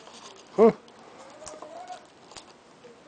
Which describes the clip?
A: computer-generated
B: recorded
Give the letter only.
B